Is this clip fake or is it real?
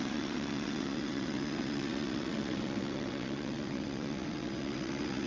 fake